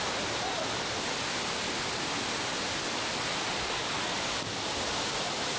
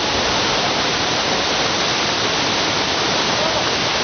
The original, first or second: second